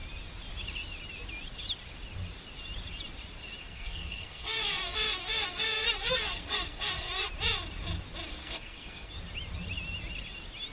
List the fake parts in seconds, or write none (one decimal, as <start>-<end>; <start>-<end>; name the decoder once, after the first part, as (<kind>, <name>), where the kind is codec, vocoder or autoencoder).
3.6-7.3 (codec, SNAC); 8.4-9.1